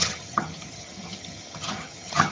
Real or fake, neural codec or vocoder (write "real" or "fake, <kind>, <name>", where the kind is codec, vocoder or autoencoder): fake, vocoder, HiFi-GAN